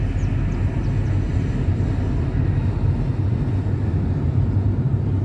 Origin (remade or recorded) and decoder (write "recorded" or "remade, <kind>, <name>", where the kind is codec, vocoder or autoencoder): recorded